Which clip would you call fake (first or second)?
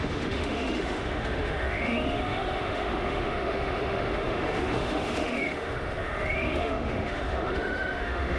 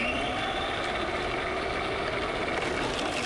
first